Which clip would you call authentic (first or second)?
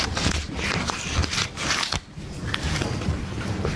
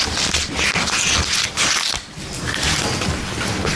second